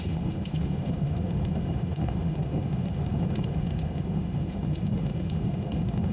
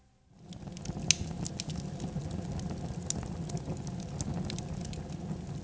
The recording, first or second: second